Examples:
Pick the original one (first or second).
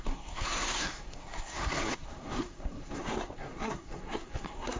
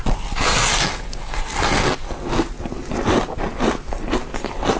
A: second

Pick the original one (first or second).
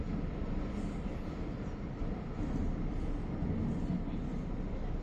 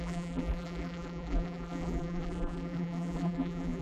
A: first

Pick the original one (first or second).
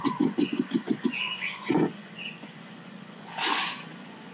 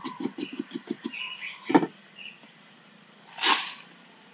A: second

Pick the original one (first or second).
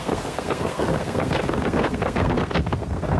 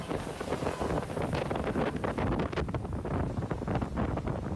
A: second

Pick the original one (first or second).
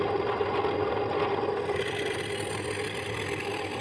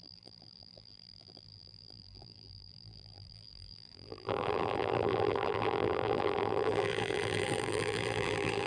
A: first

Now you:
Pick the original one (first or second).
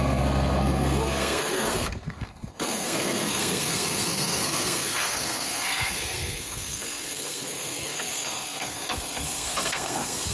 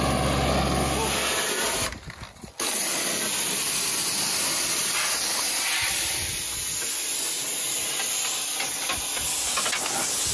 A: second